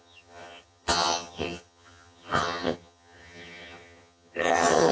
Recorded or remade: remade